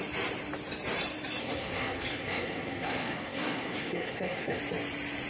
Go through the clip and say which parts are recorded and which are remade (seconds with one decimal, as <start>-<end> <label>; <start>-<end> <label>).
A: 0.0-1.4 recorded; 1.4-4.6 remade; 4.6-5.3 recorded